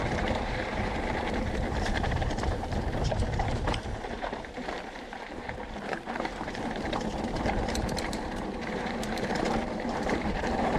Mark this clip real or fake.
fake